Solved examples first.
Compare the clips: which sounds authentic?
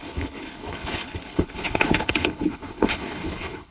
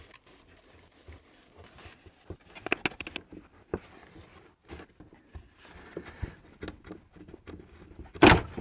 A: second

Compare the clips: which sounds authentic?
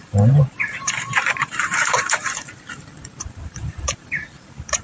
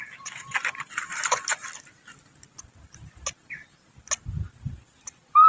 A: second